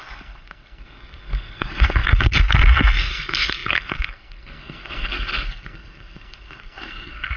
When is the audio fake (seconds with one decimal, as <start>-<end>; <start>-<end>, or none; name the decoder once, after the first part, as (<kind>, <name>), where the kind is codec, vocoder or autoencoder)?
0.0-7.4 (codec, SNAC)